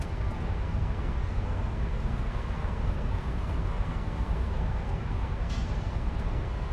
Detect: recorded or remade remade